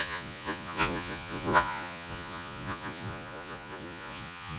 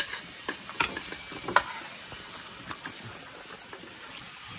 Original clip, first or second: second